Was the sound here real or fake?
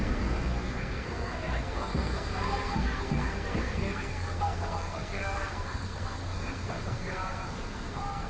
fake